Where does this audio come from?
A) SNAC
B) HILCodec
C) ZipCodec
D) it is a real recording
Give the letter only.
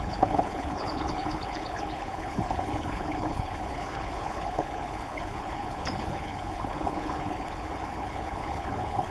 B